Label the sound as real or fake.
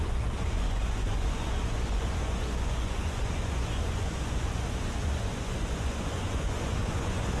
fake